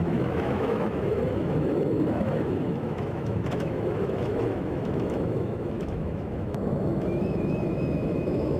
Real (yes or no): no